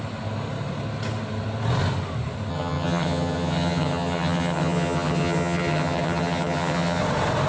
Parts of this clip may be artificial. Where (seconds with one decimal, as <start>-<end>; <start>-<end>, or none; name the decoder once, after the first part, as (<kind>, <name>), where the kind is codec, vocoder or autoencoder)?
2.5-7.0 (vocoder, HiFi-GAN)